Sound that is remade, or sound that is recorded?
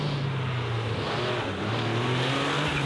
recorded